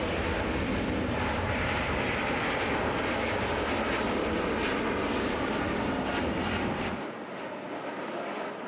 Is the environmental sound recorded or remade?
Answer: recorded